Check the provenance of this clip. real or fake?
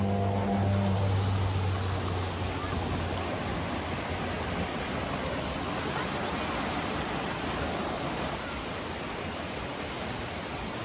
real